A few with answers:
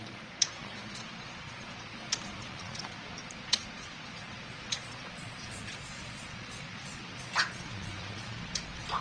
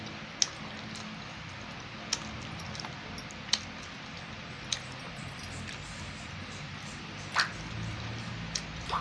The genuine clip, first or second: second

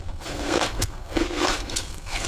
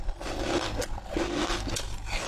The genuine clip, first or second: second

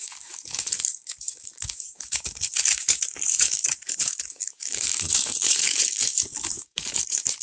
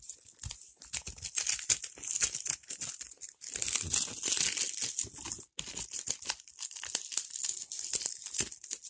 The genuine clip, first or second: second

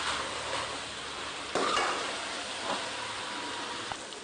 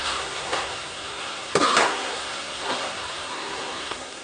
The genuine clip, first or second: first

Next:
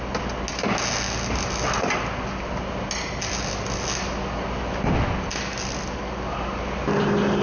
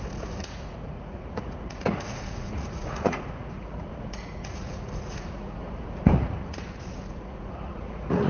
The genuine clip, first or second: first